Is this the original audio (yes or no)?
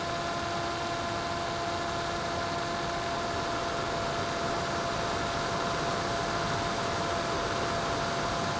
yes